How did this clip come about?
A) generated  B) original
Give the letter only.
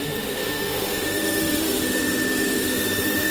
A